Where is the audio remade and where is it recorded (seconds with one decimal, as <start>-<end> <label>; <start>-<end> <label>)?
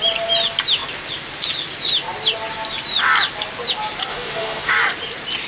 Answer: 0.0-4.1 recorded; 4.1-4.7 remade; 4.7-5.5 recorded